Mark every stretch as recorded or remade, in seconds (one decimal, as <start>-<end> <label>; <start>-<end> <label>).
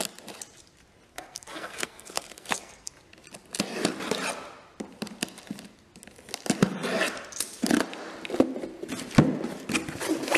0.0-1.1 recorded; 1.1-2.9 remade; 2.9-10.4 recorded